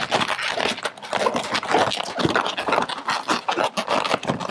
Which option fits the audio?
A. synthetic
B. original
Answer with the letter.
B